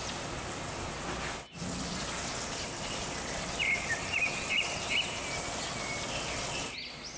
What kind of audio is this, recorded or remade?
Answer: recorded